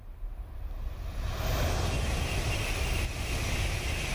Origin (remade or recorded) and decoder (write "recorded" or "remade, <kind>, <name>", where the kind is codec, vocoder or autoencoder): recorded